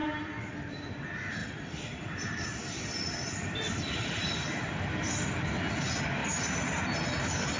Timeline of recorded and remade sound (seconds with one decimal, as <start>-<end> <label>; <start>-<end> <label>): 0.0-0.5 remade; 0.5-1.4 recorded; 1.4-5.6 remade; 5.6-7.6 recorded